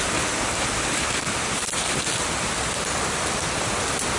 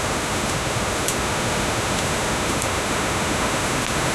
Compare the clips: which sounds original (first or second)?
first